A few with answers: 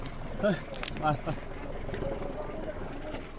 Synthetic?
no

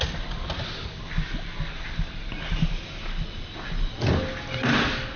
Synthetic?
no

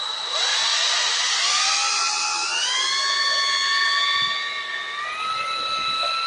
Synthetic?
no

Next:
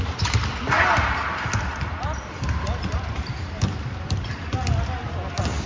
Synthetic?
no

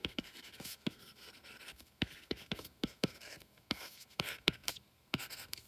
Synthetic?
yes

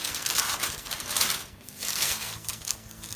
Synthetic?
yes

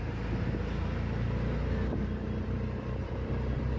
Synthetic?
no